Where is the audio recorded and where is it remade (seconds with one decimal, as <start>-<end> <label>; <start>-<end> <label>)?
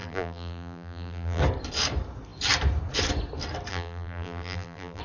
0.0-1.4 remade; 1.4-3.7 recorded; 3.7-5.0 remade